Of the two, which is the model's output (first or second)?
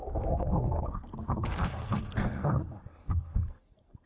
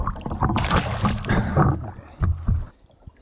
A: first